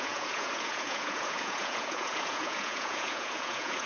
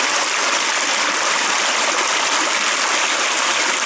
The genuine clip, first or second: second